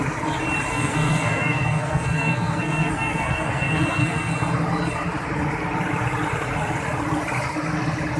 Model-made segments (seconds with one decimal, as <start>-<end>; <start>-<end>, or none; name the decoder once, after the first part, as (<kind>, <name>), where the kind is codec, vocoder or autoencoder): 0.7-4.3 (codec, SNAC)